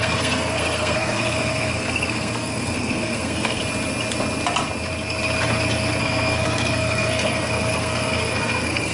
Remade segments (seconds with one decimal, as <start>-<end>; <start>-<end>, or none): 0.0-3.6; 6.0-8.9